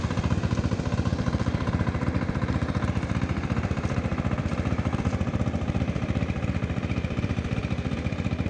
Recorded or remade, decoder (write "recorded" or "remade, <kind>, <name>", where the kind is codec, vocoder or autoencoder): remade, vocoder, BigVGAN v2